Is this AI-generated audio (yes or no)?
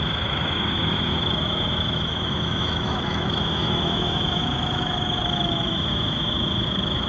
yes